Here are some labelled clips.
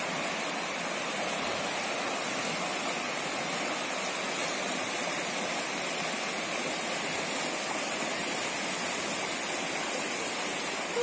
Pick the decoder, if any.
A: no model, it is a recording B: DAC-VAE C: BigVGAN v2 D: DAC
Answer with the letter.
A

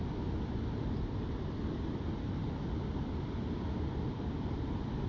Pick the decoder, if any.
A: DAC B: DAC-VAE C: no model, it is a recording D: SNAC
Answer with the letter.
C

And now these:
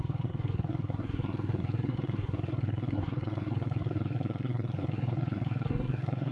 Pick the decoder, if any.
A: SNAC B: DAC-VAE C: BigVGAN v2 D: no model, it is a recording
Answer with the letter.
A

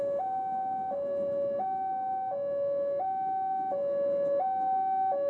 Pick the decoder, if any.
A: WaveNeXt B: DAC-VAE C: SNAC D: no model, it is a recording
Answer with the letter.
D